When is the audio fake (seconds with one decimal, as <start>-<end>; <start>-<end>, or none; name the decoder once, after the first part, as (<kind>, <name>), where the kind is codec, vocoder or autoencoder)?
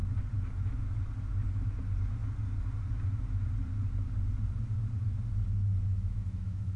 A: 5.9-6.8 (autoencoder, DAC-VAE)